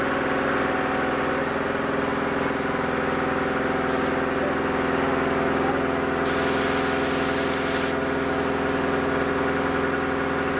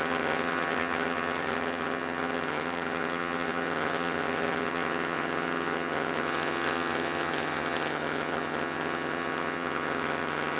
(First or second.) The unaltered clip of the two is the first